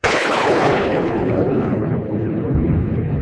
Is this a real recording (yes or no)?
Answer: no